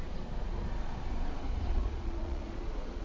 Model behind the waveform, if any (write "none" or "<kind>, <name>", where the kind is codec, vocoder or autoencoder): vocoder, Vocos